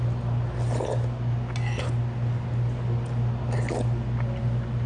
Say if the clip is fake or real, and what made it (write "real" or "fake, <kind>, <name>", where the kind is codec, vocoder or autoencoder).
real